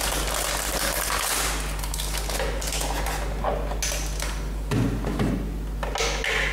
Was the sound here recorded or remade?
recorded